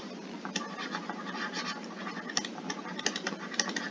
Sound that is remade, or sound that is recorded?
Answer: recorded